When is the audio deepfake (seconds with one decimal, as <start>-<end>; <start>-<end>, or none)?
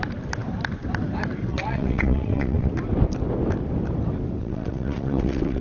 1.5-2.7; 4.4-5.6